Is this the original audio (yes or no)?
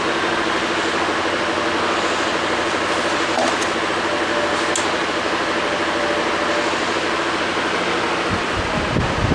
yes